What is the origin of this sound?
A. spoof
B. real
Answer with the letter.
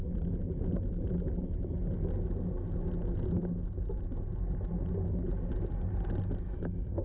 B